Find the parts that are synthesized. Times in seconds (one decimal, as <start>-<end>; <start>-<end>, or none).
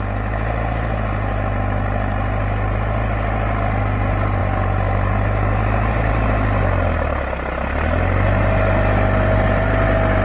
none